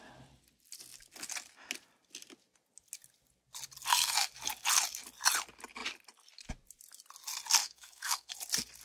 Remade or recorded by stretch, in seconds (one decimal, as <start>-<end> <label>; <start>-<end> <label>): 0.0-7.6 recorded; 7.6-8.3 remade; 8.3-8.8 recorded